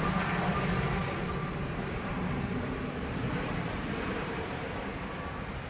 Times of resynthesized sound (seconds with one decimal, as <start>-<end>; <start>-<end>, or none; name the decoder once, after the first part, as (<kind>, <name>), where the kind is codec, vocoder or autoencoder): 1.0-3.5 (vocoder, BigVGAN v2)